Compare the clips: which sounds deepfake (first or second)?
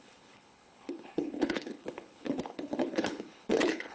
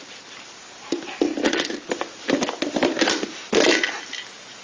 first